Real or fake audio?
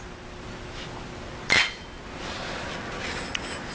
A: real